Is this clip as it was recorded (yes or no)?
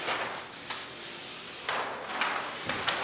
yes